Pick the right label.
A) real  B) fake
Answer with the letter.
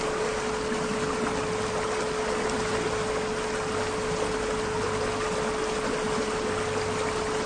A